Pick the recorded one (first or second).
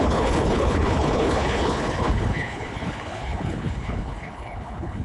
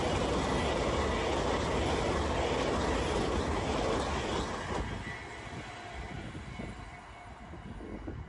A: second